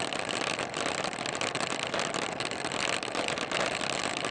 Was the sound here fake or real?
real